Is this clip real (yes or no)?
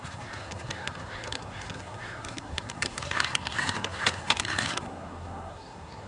no